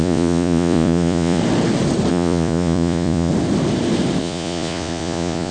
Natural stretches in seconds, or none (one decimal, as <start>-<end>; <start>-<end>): 1.4-2.1; 3.3-4.2